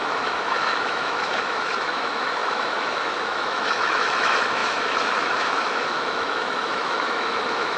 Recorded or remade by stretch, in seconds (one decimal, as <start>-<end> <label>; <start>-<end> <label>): 0.0-7.8 remade